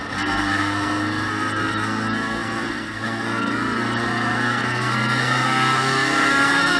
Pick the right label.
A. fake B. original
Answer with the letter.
A